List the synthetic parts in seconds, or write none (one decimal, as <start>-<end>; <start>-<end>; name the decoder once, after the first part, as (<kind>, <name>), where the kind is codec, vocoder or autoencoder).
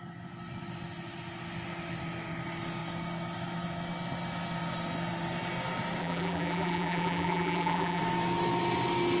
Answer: 6.0-8.0 (vocoder, BigVGAN v2)